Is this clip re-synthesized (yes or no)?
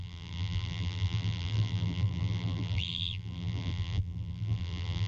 yes